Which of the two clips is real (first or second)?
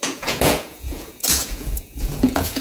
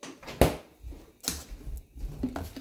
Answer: second